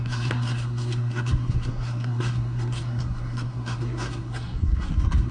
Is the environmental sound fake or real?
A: fake